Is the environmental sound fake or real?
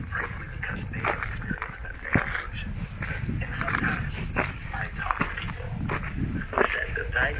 real